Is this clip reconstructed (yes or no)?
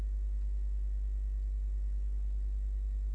no